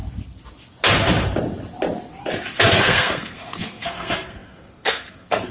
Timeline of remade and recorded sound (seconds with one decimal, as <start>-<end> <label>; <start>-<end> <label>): 0.0-2.8 recorded; 2.8-5.5 remade